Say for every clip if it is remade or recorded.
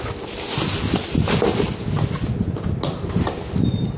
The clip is recorded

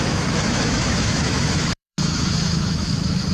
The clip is remade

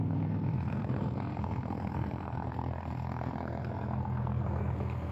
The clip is remade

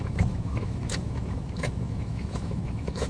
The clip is remade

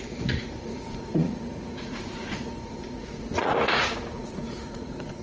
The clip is remade